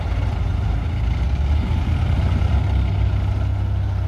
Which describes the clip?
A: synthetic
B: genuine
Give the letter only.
B